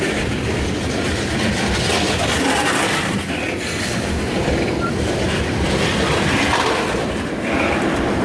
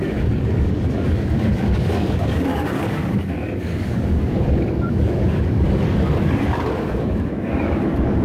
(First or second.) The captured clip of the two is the first